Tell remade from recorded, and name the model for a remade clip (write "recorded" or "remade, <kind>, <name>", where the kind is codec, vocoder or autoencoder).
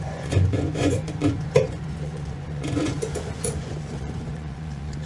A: remade, vocoder, Vocos